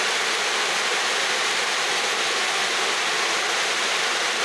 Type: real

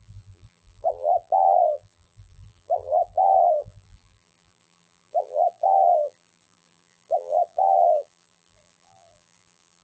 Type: fake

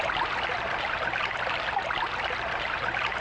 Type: real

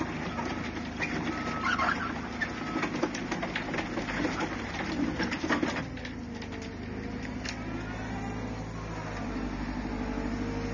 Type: real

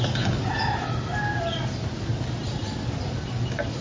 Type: real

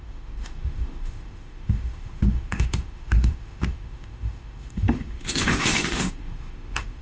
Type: fake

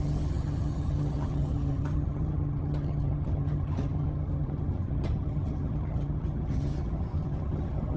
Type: fake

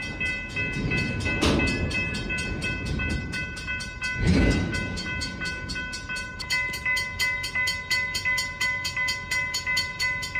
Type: real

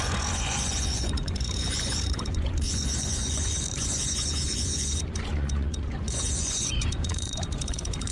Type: fake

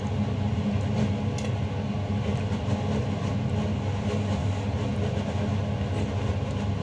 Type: real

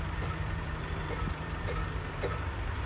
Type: fake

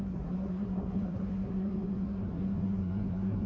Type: fake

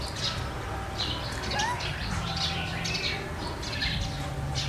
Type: real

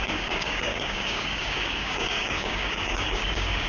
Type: fake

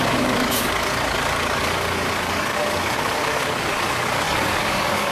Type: fake